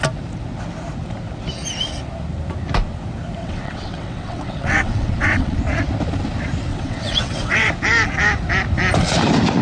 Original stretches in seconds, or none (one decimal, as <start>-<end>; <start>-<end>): 0.0-3.4; 5.6-6.7; 7.7-9.6